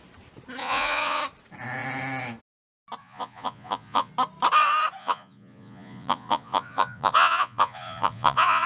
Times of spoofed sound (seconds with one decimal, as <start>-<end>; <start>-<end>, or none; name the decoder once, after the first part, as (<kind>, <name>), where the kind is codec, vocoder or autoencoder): 0.6-1.2 (vocoder, Vocos); 3.0-4.1; 5.0-8.7